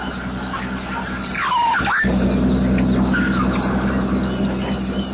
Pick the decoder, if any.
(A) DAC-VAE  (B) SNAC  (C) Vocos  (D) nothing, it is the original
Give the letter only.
D